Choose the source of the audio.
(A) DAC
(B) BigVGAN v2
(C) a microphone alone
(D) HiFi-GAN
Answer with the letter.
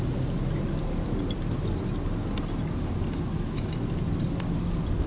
C